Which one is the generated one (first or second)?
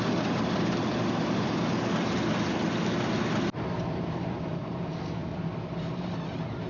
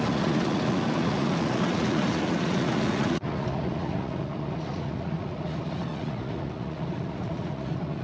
second